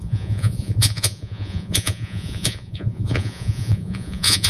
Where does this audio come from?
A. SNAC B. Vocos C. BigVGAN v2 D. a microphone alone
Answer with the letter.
B